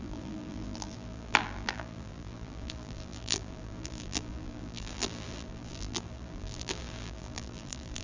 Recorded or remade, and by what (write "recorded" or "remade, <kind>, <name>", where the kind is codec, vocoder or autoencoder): remade, vocoder, BigVGAN v2